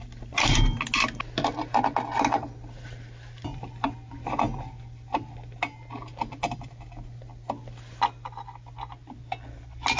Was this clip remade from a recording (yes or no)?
no